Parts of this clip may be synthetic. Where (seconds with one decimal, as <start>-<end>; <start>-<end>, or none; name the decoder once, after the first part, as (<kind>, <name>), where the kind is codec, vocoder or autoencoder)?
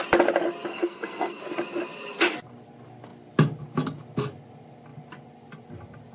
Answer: 0.7-1.4 (codec, SNAC)